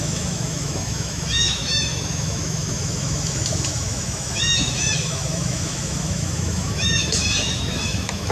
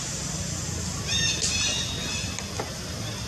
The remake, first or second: first